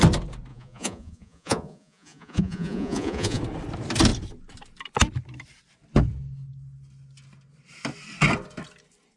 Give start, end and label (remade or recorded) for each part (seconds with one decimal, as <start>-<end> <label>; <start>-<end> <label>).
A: 0.0-0.5 recorded; 0.5-3.4 remade; 3.4-9.2 recorded